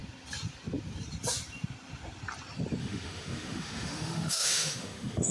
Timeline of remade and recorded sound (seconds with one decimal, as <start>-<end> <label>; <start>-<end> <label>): 0.0-2.8 recorded; 2.8-5.3 remade